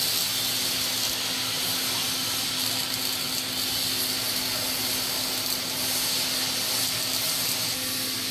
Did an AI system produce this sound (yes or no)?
no